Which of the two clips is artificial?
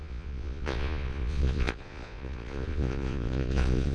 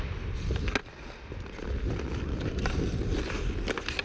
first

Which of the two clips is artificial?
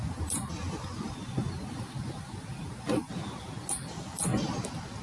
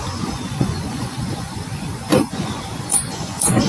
second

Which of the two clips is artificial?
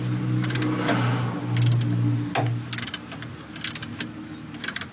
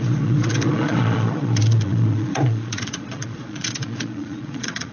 second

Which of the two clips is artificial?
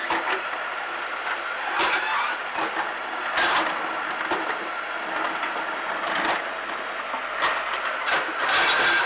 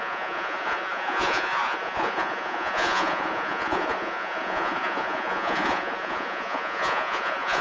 second